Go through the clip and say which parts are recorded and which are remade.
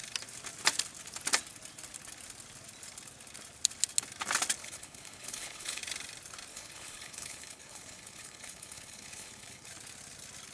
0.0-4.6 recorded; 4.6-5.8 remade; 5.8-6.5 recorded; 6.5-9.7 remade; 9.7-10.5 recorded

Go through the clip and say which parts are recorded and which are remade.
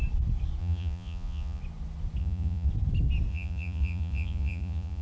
0.0-0.6 recorded; 0.6-1.6 remade; 1.6-2.2 recorded; 2.2-2.7 remade; 2.7-3.3 recorded; 3.3-5.0 remade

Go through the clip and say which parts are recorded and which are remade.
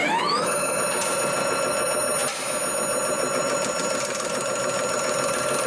0.0-0.8 remade; 0.8-5.7 recorded